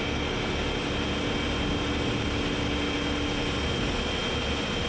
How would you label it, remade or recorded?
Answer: recorded